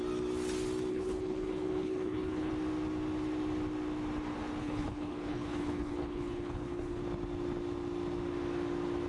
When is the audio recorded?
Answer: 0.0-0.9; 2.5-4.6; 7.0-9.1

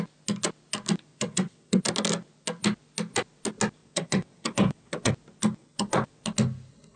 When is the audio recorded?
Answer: 0.0-1.1; 1.8-3.8; 5.1-5.6; 6.2-7.0